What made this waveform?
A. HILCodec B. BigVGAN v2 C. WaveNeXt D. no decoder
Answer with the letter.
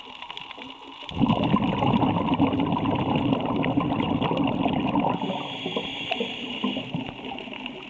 D